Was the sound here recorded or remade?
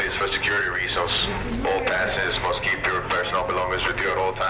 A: recorded